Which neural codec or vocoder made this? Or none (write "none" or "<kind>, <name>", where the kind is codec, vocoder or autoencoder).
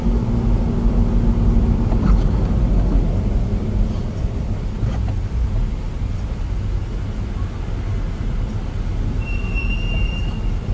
none